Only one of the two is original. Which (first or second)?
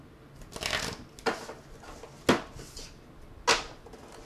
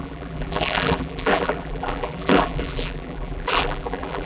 first